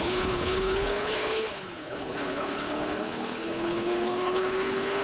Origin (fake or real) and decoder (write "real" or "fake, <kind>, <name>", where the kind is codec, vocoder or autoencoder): fake, codec, HILCodec